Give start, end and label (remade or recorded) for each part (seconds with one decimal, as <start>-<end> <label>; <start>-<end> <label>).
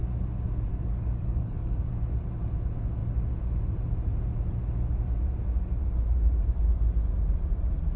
0.0-0.7 recorded; 0.7-1.9 remade; 1.9-8.0 recorded